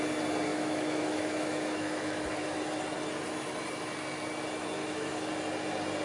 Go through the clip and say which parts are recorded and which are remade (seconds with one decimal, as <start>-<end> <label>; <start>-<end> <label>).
0.0-0.5 recorded; 0.5-2.3 remade; 2.3-4.8 recorded; 4.8-5.3 remade; 5.3-6.0 recorded